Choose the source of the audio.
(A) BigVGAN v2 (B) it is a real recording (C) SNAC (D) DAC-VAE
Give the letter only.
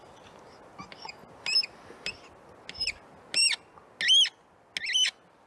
B